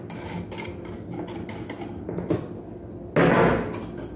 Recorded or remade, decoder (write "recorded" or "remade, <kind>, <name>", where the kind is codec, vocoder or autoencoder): recorded